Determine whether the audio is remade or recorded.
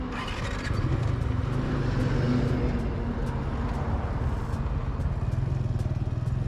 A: recorded